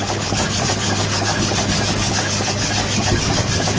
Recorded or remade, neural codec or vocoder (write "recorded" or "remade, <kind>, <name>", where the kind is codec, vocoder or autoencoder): remade, codec, DAC